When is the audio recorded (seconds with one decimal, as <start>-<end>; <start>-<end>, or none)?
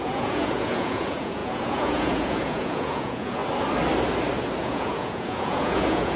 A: 3.4-4.6